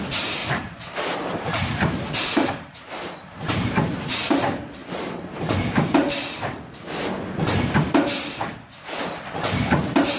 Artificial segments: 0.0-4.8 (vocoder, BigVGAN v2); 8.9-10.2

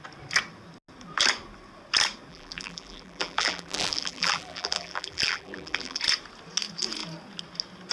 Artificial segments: 2.3-6.0 (vocoder, BigVGAN v2)

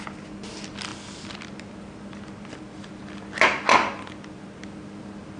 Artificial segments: none

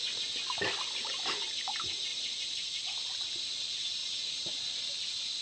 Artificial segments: 2.1-2.8 (vocoder, BigVGAN v2)